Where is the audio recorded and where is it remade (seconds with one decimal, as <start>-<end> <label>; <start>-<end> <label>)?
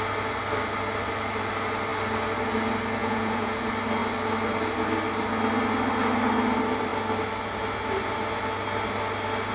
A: 0.0-3.0 recorded; 3.0-3.6 remade; 3.6-9.5 recorded